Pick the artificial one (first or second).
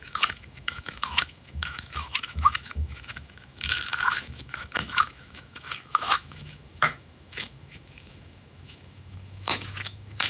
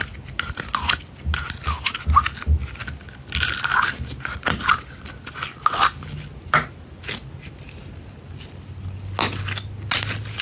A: first